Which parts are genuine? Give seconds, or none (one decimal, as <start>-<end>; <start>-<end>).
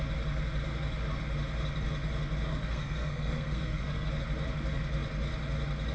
0.0-2.5; 4.1-5.9